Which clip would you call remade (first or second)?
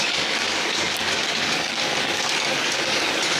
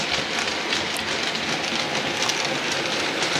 first